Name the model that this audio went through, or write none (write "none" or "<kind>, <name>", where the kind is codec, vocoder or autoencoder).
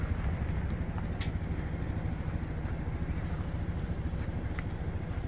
none